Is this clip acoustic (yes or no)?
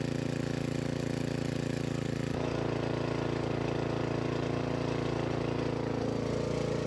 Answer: yes